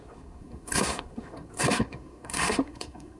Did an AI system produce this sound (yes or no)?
yes